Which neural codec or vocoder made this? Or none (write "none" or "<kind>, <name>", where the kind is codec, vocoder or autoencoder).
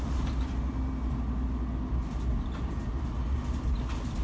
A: none